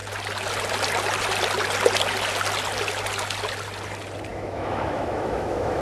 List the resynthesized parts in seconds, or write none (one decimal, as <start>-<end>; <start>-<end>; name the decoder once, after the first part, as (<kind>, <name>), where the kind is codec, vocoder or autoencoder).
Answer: 4.3-5.8 (autoencoder, DAC-VAE)